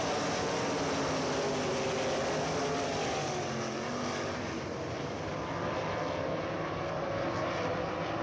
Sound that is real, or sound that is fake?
real